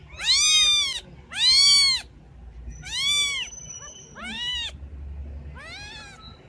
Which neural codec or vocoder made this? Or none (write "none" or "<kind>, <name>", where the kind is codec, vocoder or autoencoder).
none